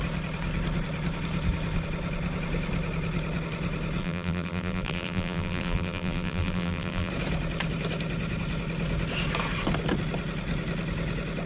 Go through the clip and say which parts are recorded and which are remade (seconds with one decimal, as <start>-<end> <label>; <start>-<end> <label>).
0.0-4.0 recorded; 4.0-7.1 remade; 7.1-11.5 recorded